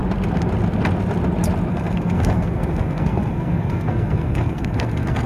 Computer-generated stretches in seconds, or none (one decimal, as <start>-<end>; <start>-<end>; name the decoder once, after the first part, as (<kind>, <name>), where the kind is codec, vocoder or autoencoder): 1.7-5.3 (codec, SNAC)